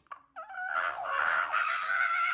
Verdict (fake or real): real